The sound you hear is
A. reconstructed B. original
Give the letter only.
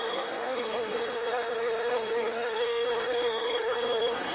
A